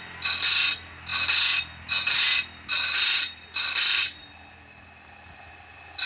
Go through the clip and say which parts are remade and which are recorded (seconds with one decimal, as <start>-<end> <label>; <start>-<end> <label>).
0.0-6.1 recorded